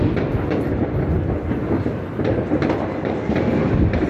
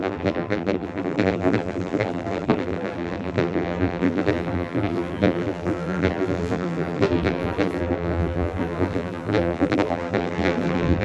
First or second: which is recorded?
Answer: first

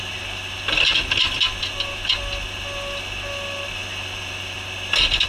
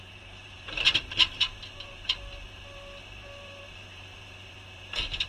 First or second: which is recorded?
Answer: first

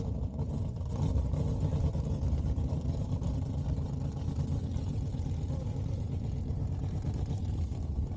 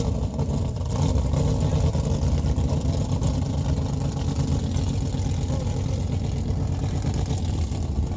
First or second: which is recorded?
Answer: second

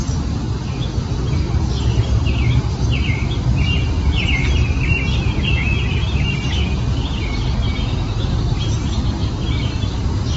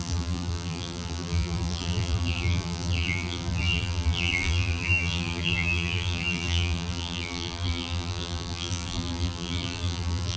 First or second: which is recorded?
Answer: first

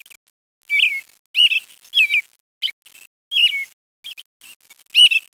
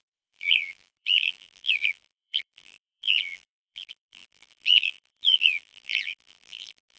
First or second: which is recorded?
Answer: first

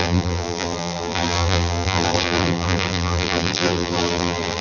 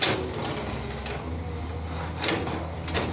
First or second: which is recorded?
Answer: second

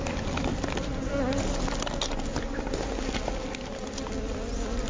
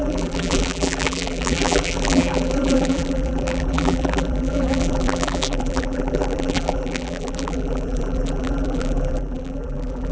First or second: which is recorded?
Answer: first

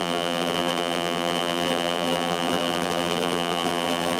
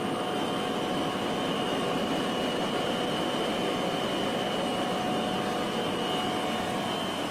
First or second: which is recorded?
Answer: second